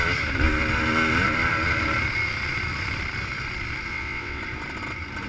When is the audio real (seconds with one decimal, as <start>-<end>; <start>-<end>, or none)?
0.0-3.9; 4.4-5.3